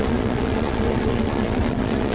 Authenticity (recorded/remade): remade